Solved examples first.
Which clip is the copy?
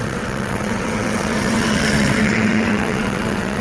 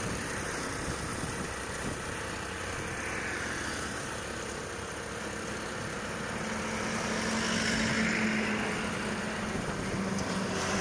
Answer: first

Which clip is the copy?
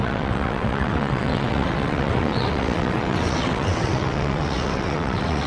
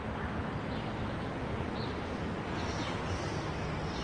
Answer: first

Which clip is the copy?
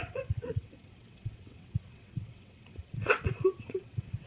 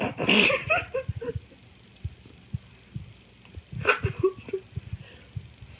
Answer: first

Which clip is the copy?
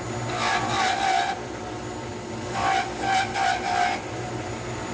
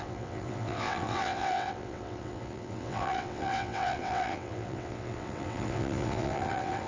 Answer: second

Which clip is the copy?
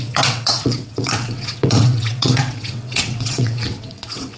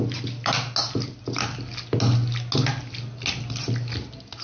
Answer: first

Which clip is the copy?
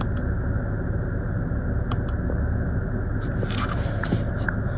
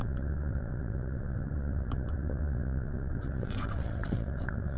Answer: second